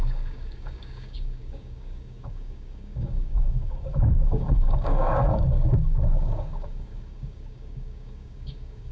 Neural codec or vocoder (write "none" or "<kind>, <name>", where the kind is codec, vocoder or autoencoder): codec, DAC